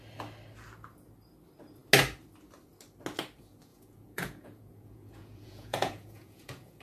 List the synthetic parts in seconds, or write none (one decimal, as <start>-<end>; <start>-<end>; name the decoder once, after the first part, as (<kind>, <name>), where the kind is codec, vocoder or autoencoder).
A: 3.7-6.8 (vocoder, Vocos)